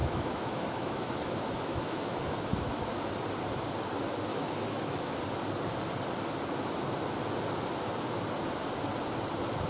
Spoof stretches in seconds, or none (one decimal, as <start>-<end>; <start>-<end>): 0.0-2.9; 4.3-5.2